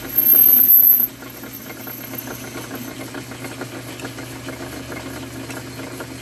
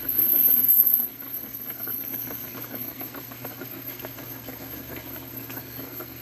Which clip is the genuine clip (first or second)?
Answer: first